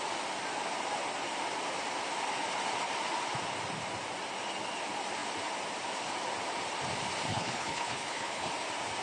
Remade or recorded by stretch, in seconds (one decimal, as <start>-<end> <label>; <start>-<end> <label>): 0.0-7.3 recorded; 7.3-8.5 remade; 8.5-9.0 recorded